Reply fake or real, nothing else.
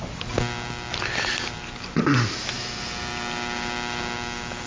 real